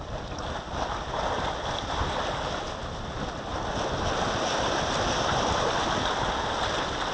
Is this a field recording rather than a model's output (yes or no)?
yes